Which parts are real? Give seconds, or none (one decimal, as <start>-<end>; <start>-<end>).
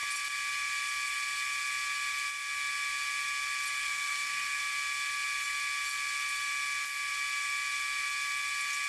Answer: 0.0-3.8; 4.6-8.9